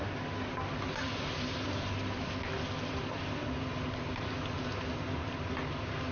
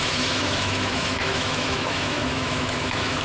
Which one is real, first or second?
first